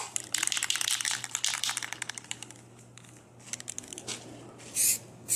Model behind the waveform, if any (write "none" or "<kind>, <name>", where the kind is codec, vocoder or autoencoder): none